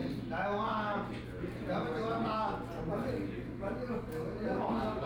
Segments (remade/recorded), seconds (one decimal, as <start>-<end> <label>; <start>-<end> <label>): 0.0-3.1 recorded; 3.1-5.1 remade